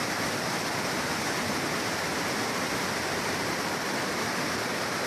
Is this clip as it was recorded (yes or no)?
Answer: yes